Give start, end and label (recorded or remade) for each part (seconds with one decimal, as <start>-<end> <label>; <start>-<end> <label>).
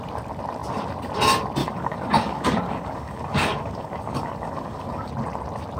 0.0-1.6 recorded; 1.6-5.1 remade; 5.1-5.8 recorded